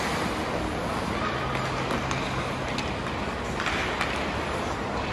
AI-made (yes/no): no